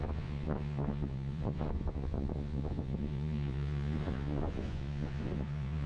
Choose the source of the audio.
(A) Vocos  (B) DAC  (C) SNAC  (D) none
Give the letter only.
A